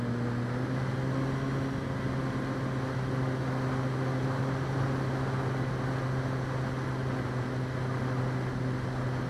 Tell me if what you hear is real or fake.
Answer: real